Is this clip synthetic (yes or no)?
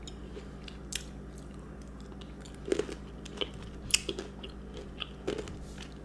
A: no